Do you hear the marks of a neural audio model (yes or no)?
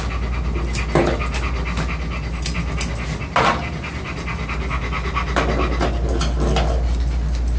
no